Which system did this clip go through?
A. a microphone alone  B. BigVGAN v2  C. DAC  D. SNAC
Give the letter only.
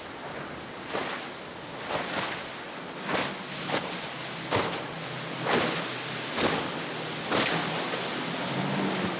A